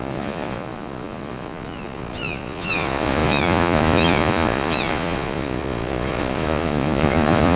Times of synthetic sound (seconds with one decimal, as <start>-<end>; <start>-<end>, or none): 0.0-7.6